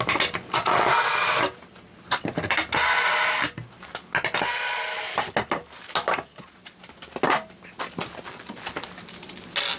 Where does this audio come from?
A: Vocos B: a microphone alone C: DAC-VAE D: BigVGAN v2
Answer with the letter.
B